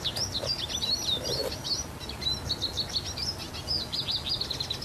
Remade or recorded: recorded